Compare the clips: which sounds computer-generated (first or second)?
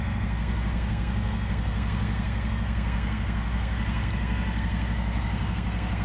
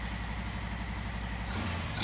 first